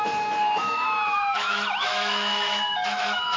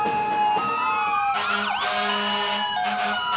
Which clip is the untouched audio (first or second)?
second